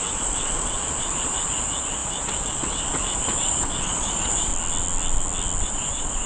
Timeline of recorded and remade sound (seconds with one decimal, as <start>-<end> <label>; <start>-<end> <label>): 0.0-4.5 remade; 4.5-5.6 recorded; 5.6-6.3 remade